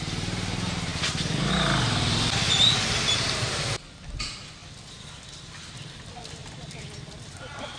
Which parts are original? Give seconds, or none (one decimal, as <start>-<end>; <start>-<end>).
0.0-6.4; 6.9-7.8